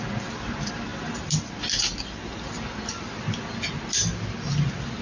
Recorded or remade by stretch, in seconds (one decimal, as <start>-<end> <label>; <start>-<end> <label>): 0.0-5.0 recorded